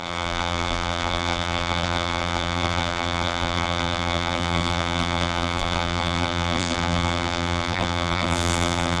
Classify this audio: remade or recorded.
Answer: remade